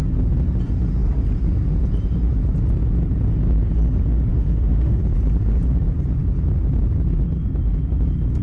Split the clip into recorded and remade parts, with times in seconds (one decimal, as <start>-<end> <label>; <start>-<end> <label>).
0.0-4.3 recorded; 4.3-5.0 remade; 5.0-8.4 recorded